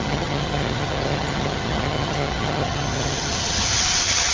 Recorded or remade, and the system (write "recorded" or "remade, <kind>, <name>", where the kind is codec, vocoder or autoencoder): remade, vocoder, HiFi-GAN